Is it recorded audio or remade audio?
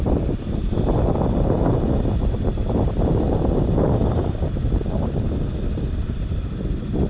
recorded